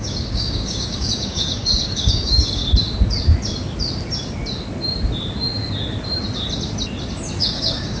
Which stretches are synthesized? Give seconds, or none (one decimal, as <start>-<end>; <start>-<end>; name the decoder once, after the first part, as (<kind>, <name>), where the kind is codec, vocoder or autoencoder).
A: 0.0-2.6 (codec, DAC); 7.4-8.0